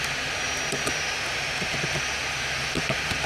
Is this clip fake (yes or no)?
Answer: no